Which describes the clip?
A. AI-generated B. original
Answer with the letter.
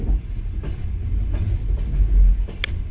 B